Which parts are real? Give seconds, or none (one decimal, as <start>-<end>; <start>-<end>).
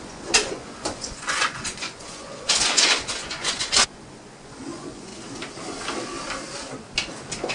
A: 5.1-7.5